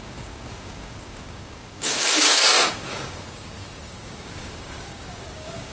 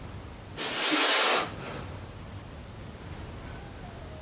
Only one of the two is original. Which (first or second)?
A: second